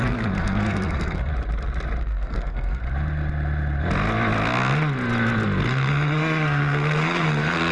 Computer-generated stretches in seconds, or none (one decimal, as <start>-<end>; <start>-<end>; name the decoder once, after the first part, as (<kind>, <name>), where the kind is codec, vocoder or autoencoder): 0.0-1.3 (codec, SNAC); 2.0-2.8; 5.6-7.7